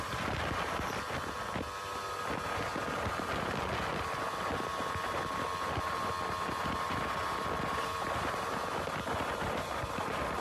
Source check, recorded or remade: recorded